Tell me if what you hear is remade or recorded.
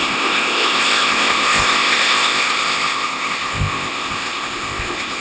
remade